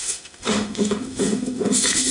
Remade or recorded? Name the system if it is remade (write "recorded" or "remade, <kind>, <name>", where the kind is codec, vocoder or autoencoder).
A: remade, autoencoder, DAC-VAE